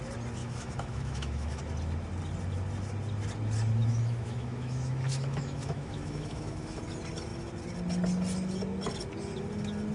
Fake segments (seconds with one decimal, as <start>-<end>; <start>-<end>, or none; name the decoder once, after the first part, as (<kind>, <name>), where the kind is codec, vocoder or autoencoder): 0.4-1.6 (autoencoder, DAC-VAE); 3.8-6.8